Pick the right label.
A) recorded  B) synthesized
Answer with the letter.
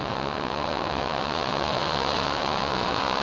B